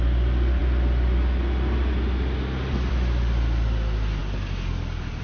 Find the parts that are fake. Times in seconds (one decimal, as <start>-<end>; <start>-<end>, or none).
none